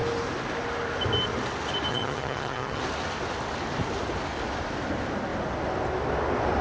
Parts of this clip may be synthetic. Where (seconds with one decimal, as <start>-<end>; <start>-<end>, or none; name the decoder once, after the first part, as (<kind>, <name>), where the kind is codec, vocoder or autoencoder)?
1.9-2.8 (vocoder, HiFi-GAN)